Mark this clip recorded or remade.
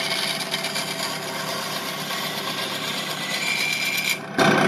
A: recorded